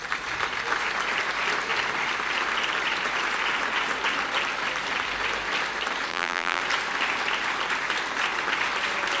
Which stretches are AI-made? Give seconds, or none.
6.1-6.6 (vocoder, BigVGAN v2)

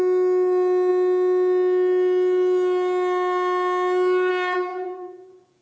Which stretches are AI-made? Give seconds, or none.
4.7-5.6 (vocoder, Vocos)

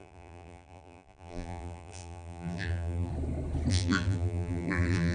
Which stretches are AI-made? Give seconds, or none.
0.0-3.1 (vocoder, BigVGAN v2); 3.7-5.1

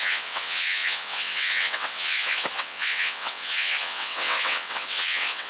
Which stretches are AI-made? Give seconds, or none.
0.0-5.5 (vocoder, WaveNeXt)